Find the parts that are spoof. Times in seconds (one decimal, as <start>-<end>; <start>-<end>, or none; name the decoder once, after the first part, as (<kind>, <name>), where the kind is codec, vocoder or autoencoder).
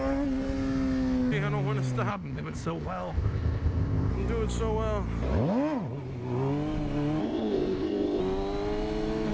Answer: 2.1-4.1 (codec, ZipCodec); 7.2-8.2